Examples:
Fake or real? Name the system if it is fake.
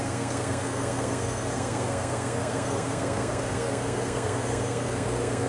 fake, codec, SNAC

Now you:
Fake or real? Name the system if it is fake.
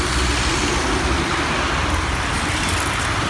real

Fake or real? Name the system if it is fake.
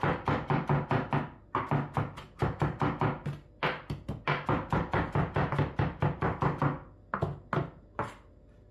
real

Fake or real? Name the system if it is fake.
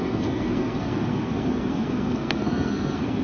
fake, codec, SNAC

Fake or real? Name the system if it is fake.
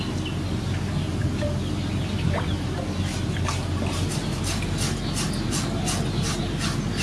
real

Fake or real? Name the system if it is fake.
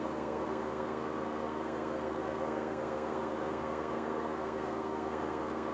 fake, codec, SNAC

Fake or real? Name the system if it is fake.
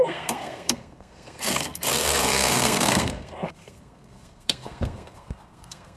fake, codec, SNAC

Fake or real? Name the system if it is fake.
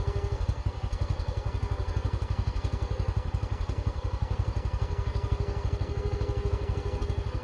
fake, codec, SNAC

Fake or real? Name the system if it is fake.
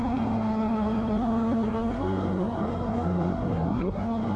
fake, codec, SNAC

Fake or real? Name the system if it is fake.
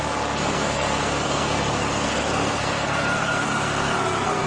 fake, codec, SNAC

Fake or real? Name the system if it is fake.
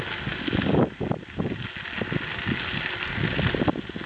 real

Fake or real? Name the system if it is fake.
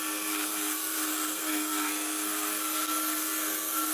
fake, codec, SNAC